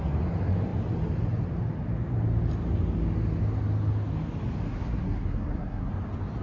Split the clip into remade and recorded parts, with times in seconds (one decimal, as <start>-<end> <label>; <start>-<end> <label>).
0.0-4.7 recorded; 4.7-5.9 remade; 5.9-6.4 recorded

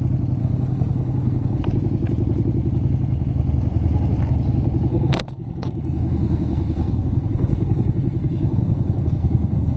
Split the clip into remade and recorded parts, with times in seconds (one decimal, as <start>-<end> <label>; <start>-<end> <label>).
0.0-0.4 recorded; 0.4-1.6 remade; 1.6-4.9 recorded; 4.9-9.8 remade

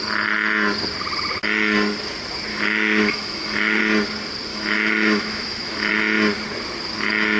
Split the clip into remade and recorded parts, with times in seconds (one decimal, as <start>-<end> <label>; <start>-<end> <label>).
0.0-2.5 recorded; 2.5-3.8 remade; 3.8-4.5 recorded; 4.5-5.9 remade; 5.9-7.4 recorded

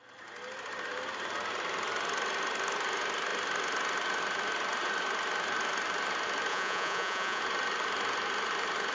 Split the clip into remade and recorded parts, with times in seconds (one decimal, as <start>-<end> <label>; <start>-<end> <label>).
0.0-6.5 recorded; 6.5-7.4 remade; 7.4-8.9 recorded

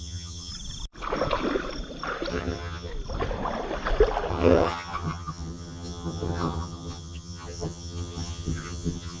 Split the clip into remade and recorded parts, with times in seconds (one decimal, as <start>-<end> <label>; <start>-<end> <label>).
0.0-0.5 remade; 0.5-2.3 recorded; 2.3-2.9 remade; 2.9-4.3 recorded; 4.3-9.2 remade

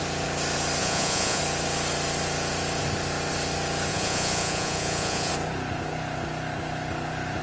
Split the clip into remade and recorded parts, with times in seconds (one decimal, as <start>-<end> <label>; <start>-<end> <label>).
0.0-0.8 recorded; 0.8-1.4 remade; 1.4-3.9 recorded; 3.9-5.3 remade; 5.3-7.4 recorded

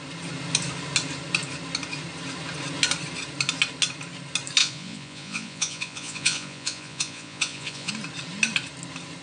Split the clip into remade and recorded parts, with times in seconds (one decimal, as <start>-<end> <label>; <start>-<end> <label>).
0.0-4.6 recorded; 4.6-7.9 remade; 7.9-9.2 recorded

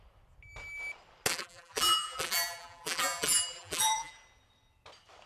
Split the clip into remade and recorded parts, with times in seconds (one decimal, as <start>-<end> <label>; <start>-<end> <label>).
0.0-1.3 recorded; 1.3-4.1 remade; 4.1-5.3 recorded